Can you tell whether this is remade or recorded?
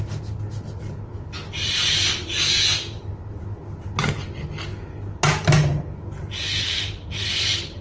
recorded